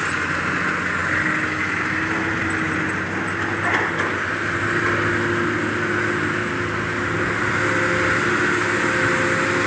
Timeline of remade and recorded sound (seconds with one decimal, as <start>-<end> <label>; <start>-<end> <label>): 0.0-9.7 recorded

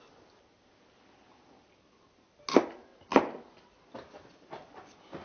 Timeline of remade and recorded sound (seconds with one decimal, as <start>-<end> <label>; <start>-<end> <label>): 0.0-5.2 recorded

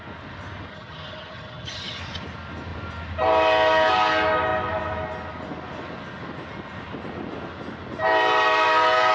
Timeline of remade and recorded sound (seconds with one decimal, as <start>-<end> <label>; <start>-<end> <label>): 0.0-0.7 recorded; 0.7-2.0 remade; 2.0-9.1 recorded

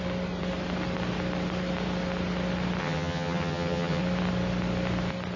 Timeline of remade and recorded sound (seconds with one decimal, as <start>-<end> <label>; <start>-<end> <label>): 0.0-2.8 recorded; 2.8-4.0 remade; 4.0-5.4 recorded

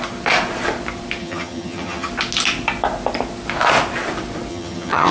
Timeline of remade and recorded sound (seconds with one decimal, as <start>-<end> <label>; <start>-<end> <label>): 0.0-1.2 recorded; 1.2-2.1 remade; 2.1-4.5 recorded; 4.5-5.1 remade

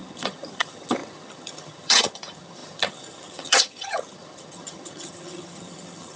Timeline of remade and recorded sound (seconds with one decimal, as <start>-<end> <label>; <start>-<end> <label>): 0.0-6.2 remade

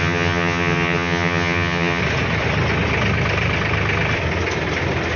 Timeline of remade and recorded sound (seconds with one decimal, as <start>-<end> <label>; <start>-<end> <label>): 0.0-2.0 remade; 2.0-5.2 recorded